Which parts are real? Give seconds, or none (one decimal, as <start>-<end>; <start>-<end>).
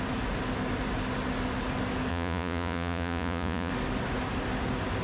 0.0-2.1; 3.7-5.0